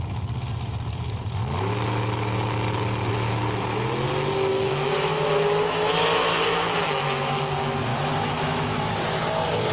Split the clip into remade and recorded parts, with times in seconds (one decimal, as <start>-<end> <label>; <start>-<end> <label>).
0.0-4.5 recorded; 4.5-7.4 remade; 7.4-7.9 recorded; 7.9-8.9 remade; 8.9-9.7 recorded